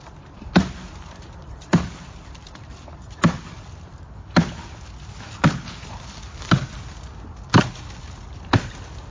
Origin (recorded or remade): recorded